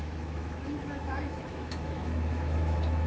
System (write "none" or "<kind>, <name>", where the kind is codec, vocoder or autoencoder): autoencoder, DAC-VAE